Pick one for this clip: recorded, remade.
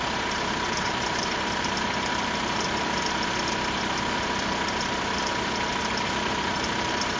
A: recorded